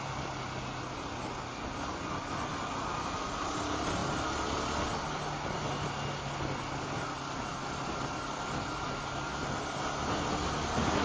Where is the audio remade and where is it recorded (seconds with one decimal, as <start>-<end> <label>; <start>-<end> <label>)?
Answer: 0.0-11.0 recorded